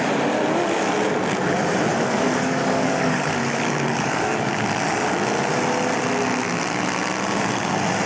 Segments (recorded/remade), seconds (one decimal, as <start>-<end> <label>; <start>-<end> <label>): 0.0-1.9 recorded; 1.9-4.5 remade; 4.5-8.1 recorded